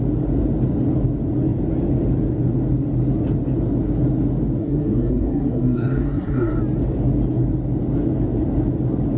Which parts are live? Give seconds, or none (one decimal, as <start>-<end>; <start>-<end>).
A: 0.0-4.6; 6.6-9.2